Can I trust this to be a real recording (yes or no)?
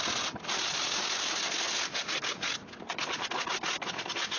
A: yes